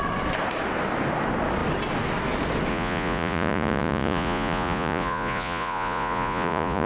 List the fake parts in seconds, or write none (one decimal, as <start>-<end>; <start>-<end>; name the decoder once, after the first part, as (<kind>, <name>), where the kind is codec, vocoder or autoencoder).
2.7-6.9 (vocoder, Vocos)